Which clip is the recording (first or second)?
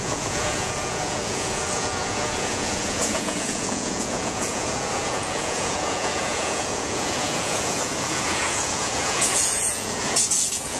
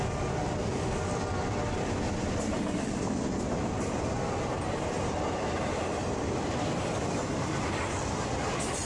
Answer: second